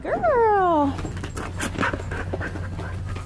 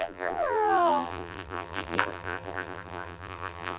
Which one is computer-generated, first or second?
second